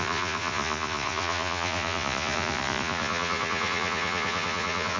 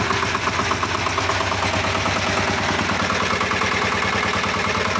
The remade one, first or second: first